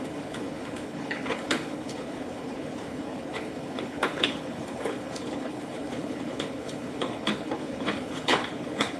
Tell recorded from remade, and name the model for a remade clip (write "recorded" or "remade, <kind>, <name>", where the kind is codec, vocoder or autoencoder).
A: remade, codec, HILCodec